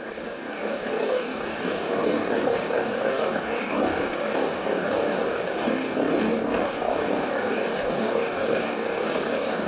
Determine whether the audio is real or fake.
fake